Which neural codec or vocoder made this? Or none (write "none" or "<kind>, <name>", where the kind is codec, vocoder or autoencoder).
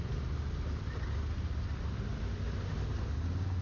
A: none